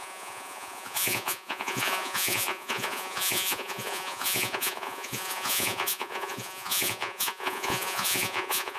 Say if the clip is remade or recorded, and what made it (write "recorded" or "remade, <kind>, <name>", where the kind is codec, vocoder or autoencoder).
remade, vocoder, Vocos